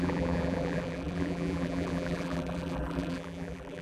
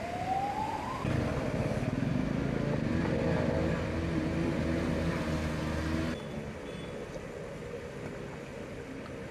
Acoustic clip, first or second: second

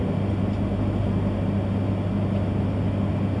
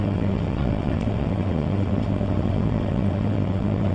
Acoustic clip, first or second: first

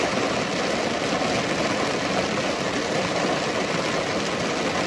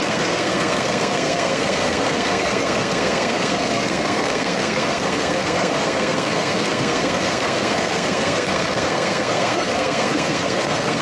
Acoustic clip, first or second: first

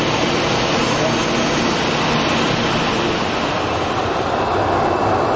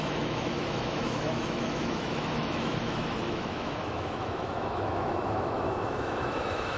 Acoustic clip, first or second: first